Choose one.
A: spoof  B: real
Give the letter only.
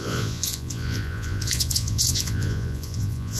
A